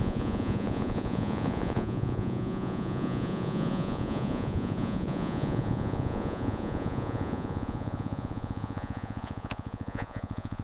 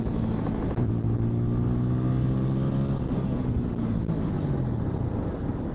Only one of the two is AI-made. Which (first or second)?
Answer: first